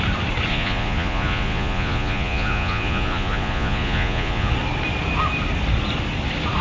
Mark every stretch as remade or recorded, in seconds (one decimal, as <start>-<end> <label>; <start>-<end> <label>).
0.0-0.5 recorded; 0.5-4.5 remade; 4.5-6.6 recorded